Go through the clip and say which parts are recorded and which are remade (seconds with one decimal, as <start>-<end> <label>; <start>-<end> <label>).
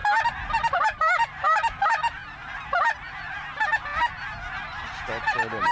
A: 0.0-2.2 remade; 2.2-3.0 recorded; 3.0-3.9 remade; 3.9-5.0 recorded; 5.0-5.7 remade